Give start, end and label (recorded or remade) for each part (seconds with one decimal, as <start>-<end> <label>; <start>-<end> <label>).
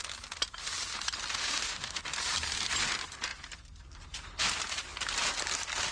0.0-1.4 recorded; 1.4-2.0 remade; 2.0-5.9 recorded